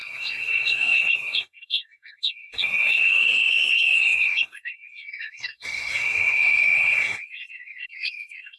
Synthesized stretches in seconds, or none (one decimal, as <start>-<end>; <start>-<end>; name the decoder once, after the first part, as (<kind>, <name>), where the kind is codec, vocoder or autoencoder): 0.0-8.6 (codec, SNAC)